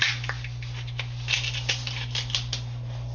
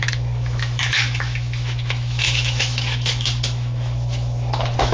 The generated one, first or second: second